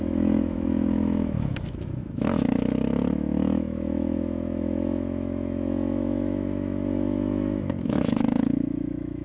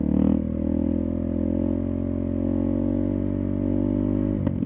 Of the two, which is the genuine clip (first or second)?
second